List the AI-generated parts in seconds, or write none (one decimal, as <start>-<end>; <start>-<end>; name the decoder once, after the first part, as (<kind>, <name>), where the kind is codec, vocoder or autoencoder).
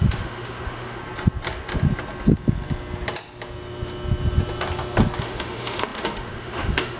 0.0-1.0 (autoencoder, DAC-VAE); 5.2-7.0